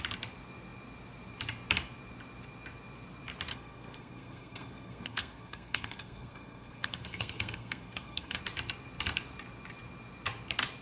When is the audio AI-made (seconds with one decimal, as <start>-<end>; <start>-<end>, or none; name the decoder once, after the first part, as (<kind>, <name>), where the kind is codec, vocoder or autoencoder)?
3.5-8.4 (codec, SNAC)